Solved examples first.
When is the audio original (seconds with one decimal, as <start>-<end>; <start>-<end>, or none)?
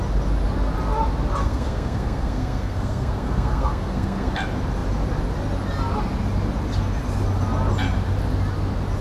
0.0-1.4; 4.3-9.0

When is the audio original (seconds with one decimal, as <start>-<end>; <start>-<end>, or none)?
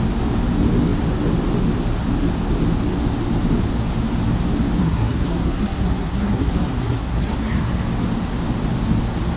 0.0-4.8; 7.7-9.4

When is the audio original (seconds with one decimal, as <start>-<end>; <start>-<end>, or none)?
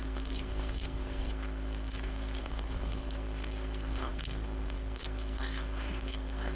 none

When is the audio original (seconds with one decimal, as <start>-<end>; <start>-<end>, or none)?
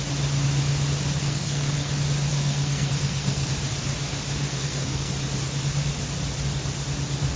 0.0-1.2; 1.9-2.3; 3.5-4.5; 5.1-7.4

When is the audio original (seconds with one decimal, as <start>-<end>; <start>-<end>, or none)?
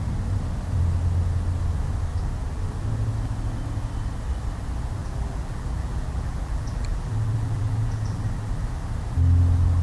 0.0-2.1; 2.6-5.0; 8.8-9.8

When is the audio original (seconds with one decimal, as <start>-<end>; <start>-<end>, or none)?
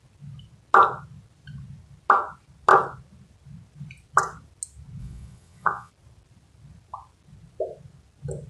0.0-5.0; 5.9-8.5